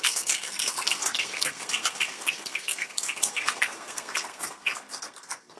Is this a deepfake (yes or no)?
yes